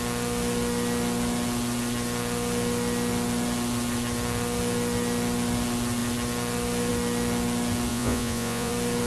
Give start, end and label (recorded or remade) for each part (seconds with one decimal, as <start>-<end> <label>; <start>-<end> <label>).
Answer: 0.0-7.9 recorded; 7.9-8.7 remade; 8.7-9.1 recorded